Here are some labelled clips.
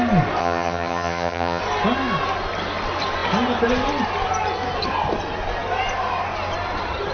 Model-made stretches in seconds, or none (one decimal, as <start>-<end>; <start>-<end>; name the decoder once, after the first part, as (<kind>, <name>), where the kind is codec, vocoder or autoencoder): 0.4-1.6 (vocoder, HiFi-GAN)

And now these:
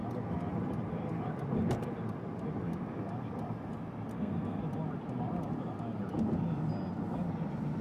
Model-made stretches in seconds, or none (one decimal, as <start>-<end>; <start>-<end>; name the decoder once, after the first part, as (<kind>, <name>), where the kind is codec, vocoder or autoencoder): 4.1-4.6 (codec, SNAC)

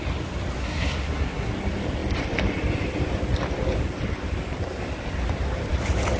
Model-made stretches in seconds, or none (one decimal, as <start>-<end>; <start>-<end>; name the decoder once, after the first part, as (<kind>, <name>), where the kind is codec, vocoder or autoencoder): 0.6-1.5 (codec, SNAC)